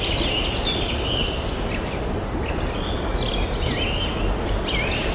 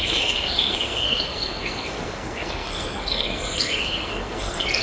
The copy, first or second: second